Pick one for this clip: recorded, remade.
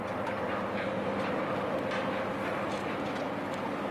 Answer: recorded